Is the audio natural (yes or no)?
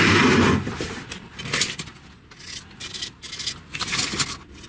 yes